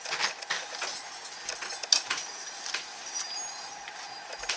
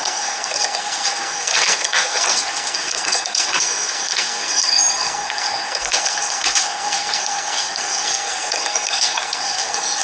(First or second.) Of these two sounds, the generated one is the second